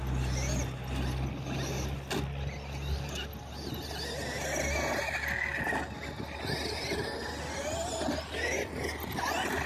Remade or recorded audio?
recorded